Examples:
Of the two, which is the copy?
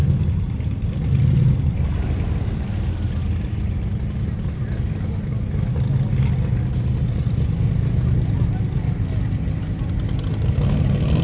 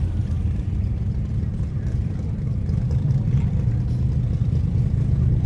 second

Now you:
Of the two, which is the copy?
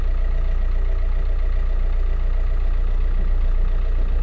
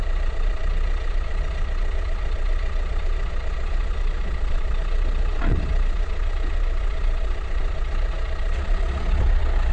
second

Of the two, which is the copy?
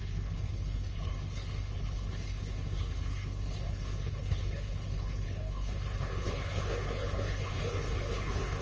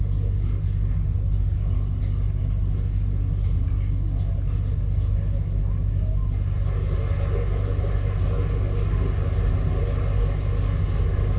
first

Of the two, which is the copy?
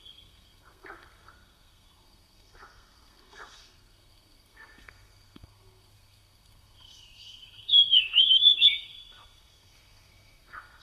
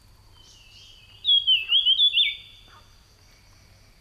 first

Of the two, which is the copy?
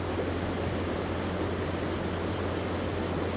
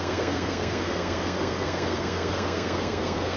second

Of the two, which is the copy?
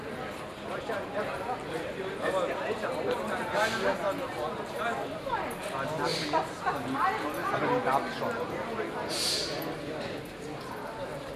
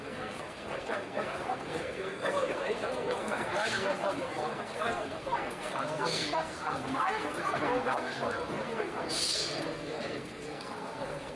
second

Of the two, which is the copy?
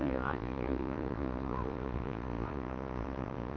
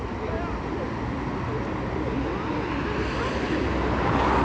first